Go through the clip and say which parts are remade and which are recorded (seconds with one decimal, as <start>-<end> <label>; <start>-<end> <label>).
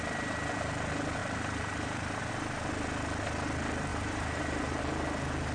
0.0-1.2 recorded; 1.2-2.3 remade; 2.3-3.9 recorded; 3.9-4.8 remade; 4.8-5.5 recorded